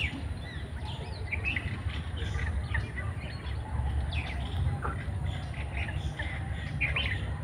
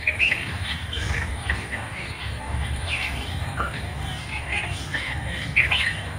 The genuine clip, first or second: first